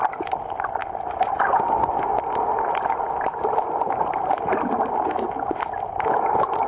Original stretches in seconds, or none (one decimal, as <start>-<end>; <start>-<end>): 0.0-6.7